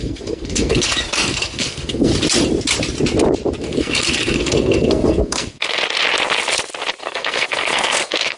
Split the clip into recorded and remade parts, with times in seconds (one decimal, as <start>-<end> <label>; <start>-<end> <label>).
0.0-2.1 remade; 2.1-3.6 recorded; 3.6-5.8 remade; 5.8-7.0 recorded; 7.0-8.4 remade